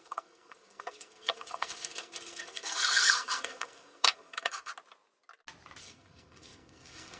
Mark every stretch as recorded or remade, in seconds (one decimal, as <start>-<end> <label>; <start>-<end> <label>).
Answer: 0.0-4.7 remade; 4.7-5.8 recorded; 5.8-7.2 remade